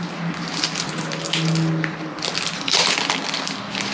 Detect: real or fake real